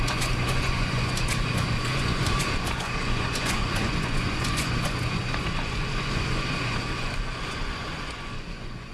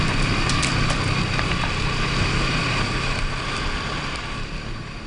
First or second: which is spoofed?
first